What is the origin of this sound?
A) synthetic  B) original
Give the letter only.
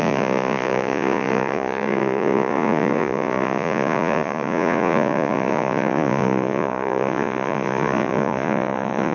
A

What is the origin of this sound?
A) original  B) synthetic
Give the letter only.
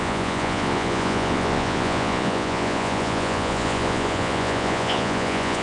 B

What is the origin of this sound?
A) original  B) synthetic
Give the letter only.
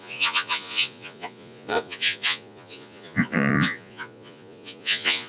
B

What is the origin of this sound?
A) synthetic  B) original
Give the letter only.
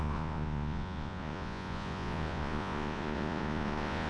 A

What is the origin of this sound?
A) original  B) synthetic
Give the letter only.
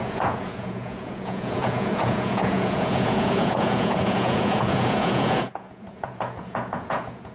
B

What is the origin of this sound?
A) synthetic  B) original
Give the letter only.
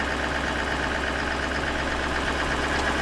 B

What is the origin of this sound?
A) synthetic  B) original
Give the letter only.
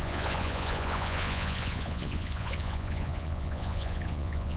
A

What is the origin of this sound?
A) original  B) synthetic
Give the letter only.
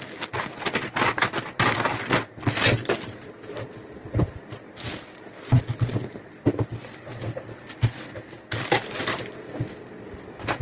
A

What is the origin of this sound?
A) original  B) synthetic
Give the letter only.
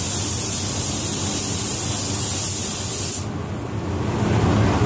A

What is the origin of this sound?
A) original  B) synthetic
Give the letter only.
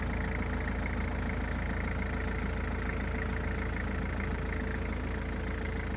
A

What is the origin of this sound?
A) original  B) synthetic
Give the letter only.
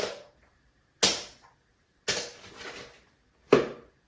A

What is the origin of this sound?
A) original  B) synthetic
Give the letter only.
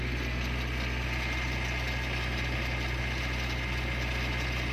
A